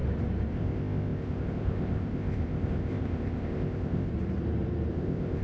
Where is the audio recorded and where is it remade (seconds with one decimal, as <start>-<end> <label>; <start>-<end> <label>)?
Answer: 0.0-0.5 recorded; 0.5-4.1 remade; 4.1-4.9 recorded; 4.9-5.4 remade